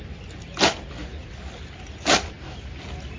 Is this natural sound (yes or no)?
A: yes